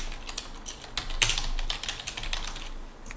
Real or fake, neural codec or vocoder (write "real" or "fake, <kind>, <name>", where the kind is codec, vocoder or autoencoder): real